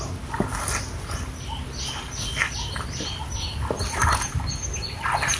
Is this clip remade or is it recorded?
recorded